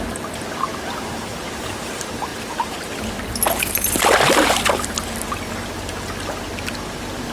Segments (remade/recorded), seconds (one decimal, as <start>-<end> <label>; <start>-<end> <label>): 0.0-7.3 recorded